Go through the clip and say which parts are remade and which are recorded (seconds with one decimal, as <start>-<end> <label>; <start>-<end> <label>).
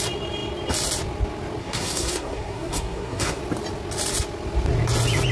0.0-1.6 recorded; 1.6-3.4 remade; 3.4-5.3 recorded